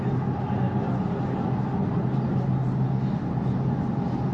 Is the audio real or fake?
real